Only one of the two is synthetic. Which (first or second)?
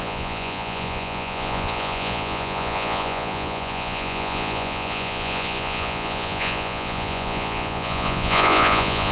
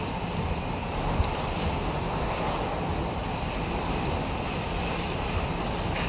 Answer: first